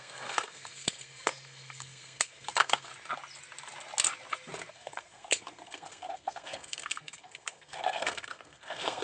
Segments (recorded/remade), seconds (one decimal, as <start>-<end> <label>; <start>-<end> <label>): 0.0-2.9 remade; 2.9-4.7 recorded; 4.7-9.0 remade